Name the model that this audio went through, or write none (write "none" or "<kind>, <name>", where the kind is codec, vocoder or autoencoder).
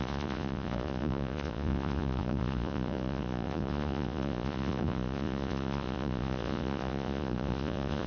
vocoder, Vocos